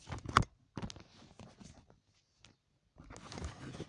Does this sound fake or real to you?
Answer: real